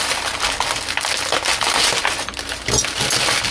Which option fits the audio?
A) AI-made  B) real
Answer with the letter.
B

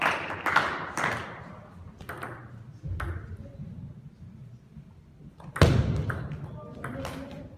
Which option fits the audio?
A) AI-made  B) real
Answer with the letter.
B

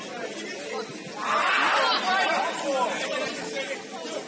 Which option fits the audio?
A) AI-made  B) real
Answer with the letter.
B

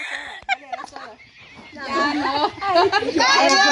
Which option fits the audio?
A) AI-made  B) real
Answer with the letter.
B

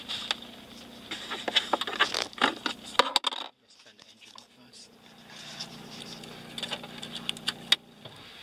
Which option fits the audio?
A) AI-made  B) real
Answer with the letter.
B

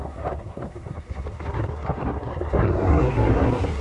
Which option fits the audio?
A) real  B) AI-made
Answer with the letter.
B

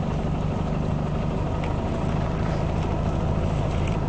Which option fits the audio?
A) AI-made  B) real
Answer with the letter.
B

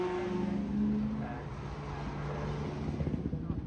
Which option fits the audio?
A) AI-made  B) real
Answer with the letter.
B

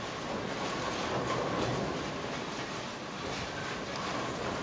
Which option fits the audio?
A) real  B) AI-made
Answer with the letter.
A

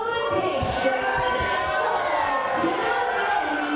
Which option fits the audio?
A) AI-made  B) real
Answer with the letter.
B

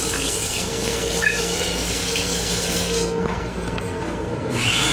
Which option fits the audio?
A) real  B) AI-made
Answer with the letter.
B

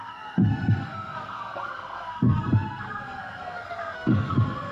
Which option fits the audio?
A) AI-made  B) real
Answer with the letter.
A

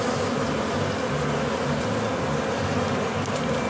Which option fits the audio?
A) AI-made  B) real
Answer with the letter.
B